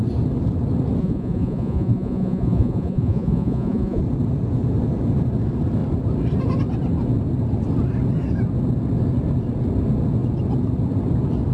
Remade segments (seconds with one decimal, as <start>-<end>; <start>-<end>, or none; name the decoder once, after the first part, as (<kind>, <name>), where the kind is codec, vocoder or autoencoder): 1.0-4.0 (vocoder, Vocos)